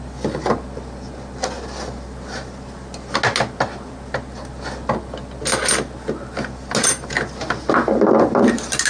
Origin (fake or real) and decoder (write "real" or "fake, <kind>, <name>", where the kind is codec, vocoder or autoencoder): real